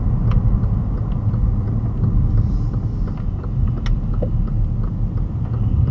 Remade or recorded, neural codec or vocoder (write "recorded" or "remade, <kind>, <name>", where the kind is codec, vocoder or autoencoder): recorded